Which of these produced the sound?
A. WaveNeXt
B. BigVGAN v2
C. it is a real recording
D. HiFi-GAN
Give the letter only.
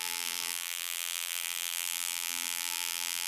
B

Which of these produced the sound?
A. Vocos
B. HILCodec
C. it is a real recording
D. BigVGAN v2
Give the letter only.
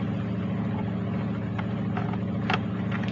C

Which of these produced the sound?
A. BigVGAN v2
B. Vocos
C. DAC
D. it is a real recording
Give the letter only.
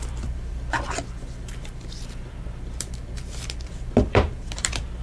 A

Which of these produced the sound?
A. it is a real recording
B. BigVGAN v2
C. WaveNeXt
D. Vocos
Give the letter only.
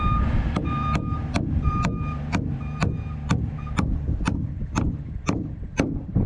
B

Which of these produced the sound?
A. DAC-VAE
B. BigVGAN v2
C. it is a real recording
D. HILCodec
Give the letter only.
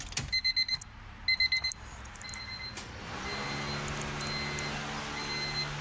C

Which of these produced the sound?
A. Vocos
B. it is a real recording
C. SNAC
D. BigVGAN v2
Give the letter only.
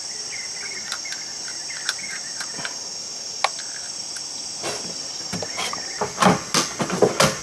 B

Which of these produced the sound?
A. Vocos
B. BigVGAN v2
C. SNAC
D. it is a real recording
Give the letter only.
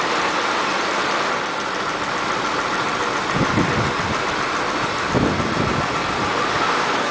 D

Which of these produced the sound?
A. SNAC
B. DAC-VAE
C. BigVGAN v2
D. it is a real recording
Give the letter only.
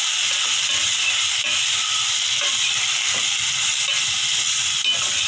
D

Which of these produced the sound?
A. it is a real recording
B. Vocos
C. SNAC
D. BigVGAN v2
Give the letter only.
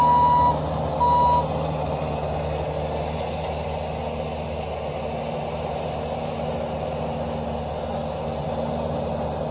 A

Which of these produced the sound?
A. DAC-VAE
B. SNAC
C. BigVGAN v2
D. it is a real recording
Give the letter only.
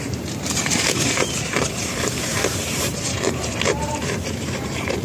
C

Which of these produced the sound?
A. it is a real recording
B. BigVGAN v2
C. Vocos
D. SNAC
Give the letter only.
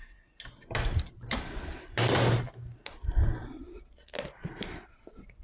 A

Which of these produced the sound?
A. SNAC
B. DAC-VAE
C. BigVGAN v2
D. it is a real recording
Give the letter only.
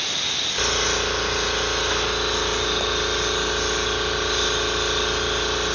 D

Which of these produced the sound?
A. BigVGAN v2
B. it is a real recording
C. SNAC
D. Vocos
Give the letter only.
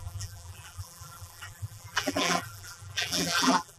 A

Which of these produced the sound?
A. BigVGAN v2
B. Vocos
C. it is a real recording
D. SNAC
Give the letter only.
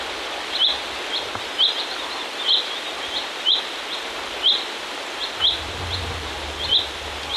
A